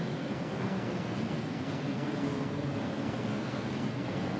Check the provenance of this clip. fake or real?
fake